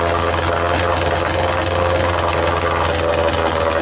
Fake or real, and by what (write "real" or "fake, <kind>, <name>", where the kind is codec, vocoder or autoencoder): real